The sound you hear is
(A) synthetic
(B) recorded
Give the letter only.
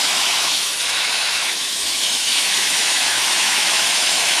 A